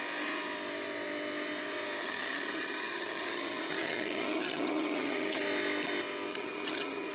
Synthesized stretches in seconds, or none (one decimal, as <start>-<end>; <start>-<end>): 2.0-5.4; 6.3-7.1